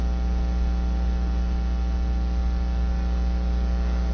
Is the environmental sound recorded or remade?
recorded